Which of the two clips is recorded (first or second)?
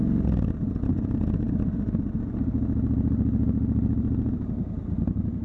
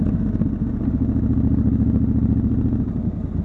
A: second